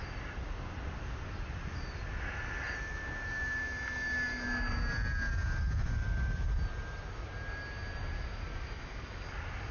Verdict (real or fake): real